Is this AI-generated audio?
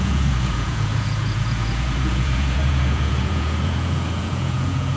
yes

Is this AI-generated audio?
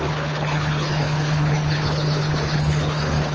yes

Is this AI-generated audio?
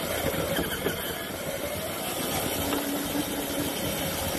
no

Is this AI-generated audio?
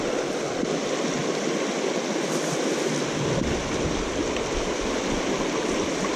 no